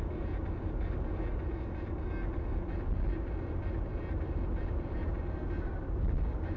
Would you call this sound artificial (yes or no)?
no